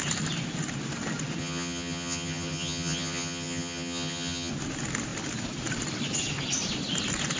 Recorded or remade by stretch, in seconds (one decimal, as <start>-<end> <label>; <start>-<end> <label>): 0.0-1.4 recorded; 1.4-4.5 remade; 4.5-7.4 recorded